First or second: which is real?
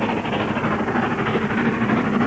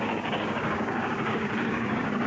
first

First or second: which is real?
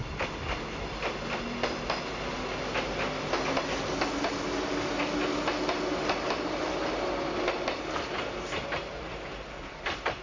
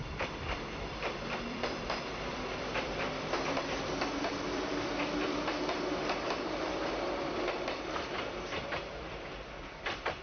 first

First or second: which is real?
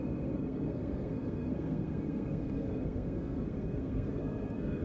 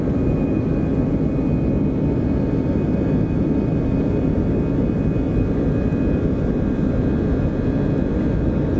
second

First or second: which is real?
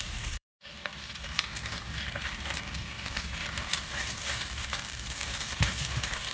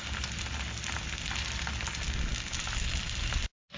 second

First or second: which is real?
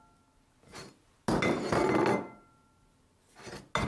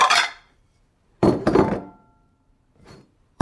first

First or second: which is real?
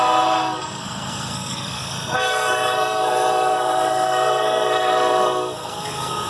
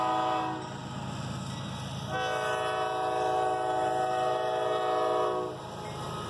second